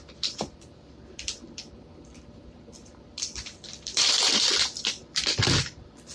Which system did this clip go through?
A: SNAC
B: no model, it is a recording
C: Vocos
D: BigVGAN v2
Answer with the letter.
D